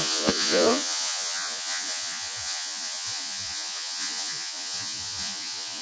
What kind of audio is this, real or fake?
fake